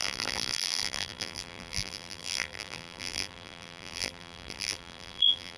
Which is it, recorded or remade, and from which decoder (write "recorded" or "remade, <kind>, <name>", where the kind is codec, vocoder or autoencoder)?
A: remade, vocoder, BigVGAN v2